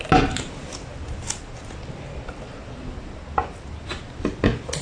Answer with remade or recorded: recorded